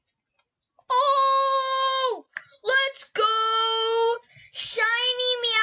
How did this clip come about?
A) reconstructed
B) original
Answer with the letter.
B